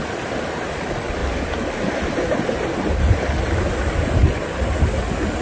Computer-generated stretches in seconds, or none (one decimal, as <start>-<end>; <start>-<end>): none

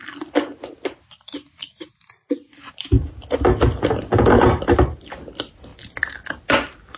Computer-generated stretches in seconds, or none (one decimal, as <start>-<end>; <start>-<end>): none

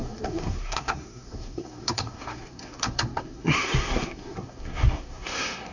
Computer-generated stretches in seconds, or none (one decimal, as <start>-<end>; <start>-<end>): 0.0-5.7

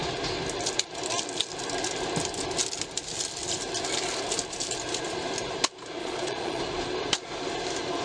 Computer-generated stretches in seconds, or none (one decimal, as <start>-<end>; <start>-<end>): 6.0-6.6